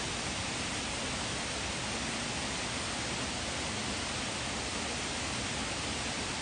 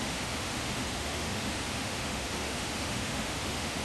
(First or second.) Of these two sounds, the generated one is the second